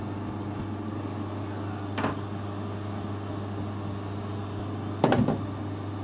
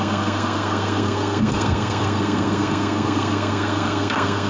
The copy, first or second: second